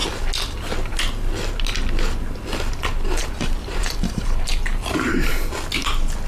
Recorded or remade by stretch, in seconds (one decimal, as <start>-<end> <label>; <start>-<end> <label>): 0.0-3.2 recorded; 3.2-5.3 remade; 5.3-6.3 recorded